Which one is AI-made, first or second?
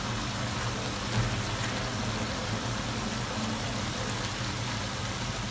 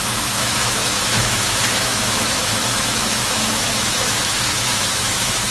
second